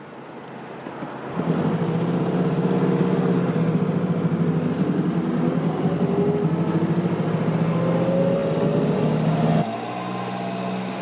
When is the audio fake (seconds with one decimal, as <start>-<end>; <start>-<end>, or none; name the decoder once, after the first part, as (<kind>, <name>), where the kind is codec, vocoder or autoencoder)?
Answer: none